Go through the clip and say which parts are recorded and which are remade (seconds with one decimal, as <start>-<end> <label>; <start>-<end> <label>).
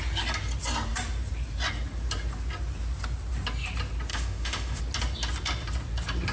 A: 0.0-4.1 recorded; 4.1-4.8 remade; 4.8-6.3 recorded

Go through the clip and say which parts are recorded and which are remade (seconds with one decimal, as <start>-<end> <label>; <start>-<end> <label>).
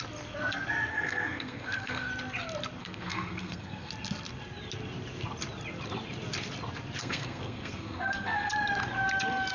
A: 0.0-0.9 recorded; 0.9-2.1 remade; 2.1-2.8 recorded; 2.8-3.9 remade; 3.9-7.0 recorded; 7.0-8.5 remade; 8.5-9.5 recorded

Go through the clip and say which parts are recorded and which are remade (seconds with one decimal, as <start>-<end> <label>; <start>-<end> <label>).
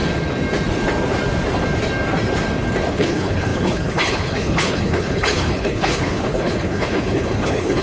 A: 0.0-2.9 recorded; 2.9-7.8 remade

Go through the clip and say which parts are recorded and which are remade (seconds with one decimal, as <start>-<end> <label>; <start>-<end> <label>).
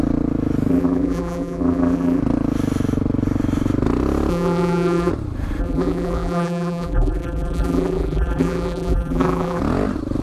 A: 0.0-0.7 recorded; 0.7-2.2 remade; 2.2-4.3 recorded; 4.3-5.1 remade; 5.1-5.6 recorded; 5.6-9.6 remade; 9.6-10.2 recorded